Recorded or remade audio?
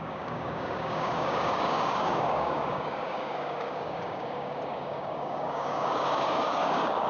remade